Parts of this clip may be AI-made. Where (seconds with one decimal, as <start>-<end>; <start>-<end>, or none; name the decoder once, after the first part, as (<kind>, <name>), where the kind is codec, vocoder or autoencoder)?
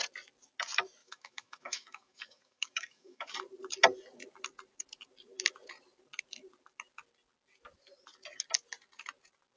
1.0-3.3 (autoencoder, DAC-VAE)